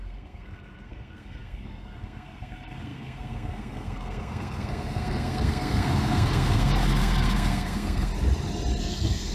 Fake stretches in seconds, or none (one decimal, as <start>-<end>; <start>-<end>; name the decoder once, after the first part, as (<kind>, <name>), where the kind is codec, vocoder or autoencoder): 0.0-8.1 (codec, SNAC); 8.8-9.3